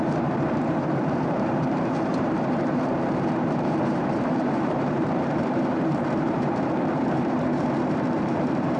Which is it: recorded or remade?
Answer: remade